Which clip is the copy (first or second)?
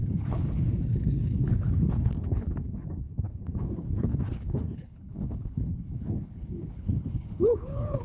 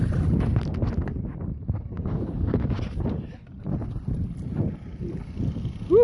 first